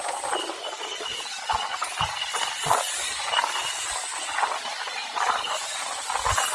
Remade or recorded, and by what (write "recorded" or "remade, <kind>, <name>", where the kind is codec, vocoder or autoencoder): recorded